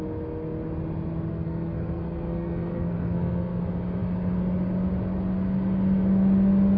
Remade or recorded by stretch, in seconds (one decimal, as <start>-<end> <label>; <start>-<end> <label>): 0.0-1.3 recorded; 1.3-3.6 remade; 3.6-6.8 recorded